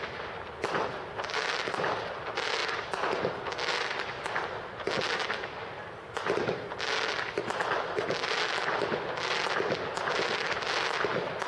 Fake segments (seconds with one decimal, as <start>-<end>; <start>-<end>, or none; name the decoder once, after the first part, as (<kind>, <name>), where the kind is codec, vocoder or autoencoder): none